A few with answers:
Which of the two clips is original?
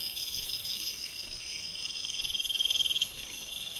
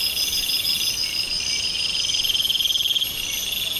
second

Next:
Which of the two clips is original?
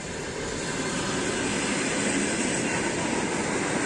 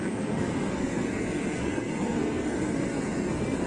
first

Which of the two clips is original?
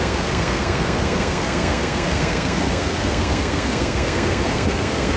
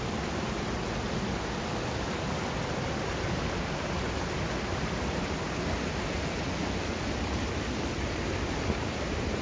second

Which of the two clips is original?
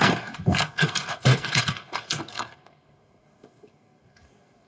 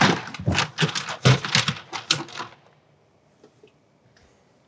second